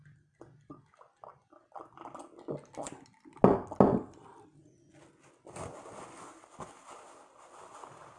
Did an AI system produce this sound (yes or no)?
no